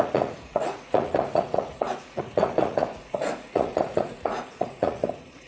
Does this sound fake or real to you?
fake